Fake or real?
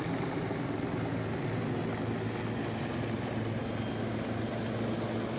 real